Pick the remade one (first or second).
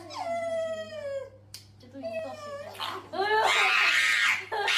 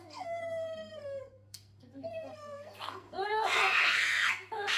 second